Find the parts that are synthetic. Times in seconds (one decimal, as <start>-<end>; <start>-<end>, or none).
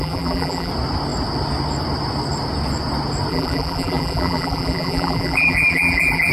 0.0-0.7; 3.3-6.3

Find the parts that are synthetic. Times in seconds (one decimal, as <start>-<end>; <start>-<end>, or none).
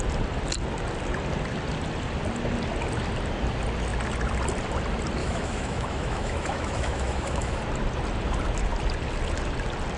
5.2-7.6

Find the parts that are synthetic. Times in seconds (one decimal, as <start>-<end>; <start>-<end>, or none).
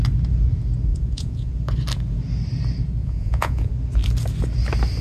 0.9-1.5; 3.0-3.7